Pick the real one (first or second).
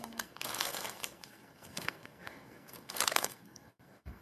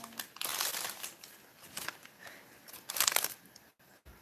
second